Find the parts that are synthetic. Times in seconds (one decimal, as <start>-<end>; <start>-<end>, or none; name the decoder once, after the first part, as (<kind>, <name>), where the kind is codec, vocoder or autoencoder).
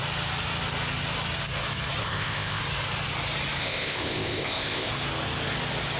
2.0-2.6 (codec, ZipCodec); 3.6-4.9